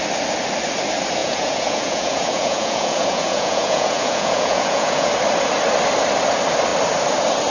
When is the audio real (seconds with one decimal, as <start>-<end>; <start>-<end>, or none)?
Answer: 0.0-1.2; 5.1-7.5